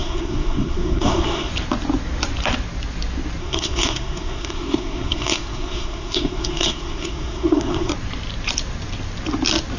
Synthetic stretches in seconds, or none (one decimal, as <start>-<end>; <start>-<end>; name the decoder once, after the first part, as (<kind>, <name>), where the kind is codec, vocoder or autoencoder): 0.0-1.5 (codec, SNAC); 3.4-7.9